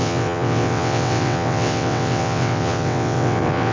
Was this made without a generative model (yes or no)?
no